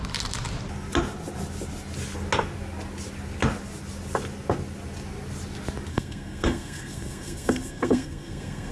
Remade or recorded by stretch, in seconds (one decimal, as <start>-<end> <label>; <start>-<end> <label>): 0.0-5.9 recorded; 5.9-8.7 remade